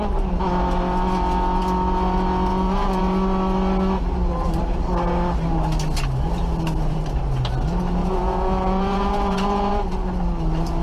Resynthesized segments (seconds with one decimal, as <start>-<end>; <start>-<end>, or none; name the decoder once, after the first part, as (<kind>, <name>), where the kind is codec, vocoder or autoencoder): 2.5-3.0 (vocoder, Vocos); 8.0-9.7